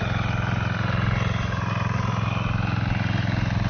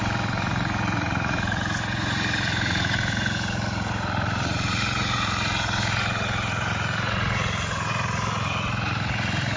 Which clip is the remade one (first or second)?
second